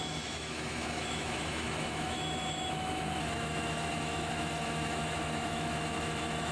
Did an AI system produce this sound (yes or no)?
yes